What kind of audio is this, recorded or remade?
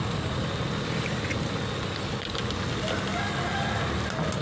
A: recorded